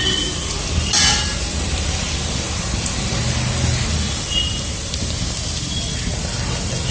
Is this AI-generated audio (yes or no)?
no